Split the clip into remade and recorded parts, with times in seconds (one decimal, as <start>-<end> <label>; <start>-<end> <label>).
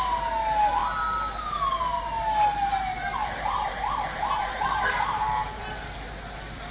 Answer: 0.0-3.2 recorded; 3.2-6.0 remade; 6.0-6.7 recorded